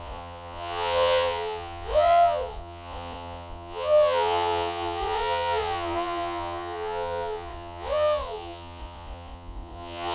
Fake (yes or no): yes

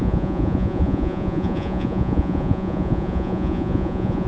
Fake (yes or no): yes